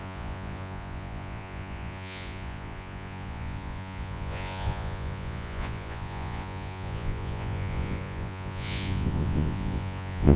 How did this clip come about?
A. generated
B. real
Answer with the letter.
A